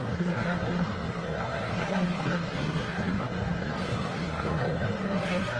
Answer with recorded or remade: remade